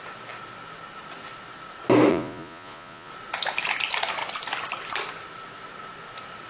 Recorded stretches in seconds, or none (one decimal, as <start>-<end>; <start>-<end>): 0.0-2.1; 3.1-6.5